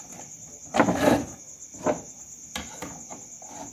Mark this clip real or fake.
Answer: real